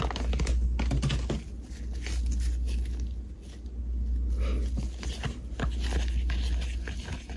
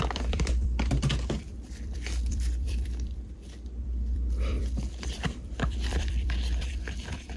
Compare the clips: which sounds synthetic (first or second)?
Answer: second